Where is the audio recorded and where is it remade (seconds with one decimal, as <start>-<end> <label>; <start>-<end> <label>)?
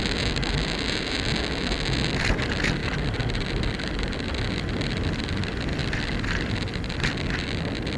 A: 0.0-8.0 recorded